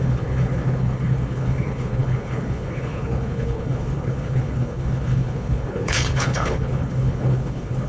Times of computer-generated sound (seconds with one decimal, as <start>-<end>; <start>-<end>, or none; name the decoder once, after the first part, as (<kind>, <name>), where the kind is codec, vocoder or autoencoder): 0.0-7.9 (codec, HILCodec)